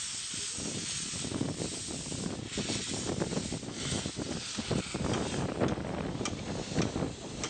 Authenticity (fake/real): real